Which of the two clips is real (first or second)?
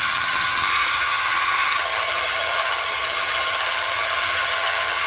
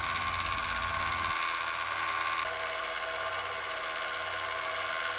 second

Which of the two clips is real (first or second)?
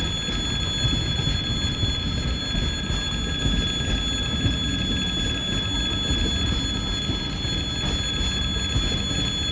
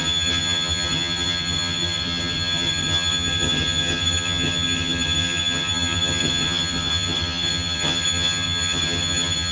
first